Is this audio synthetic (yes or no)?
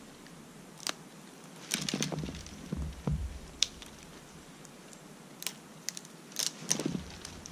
no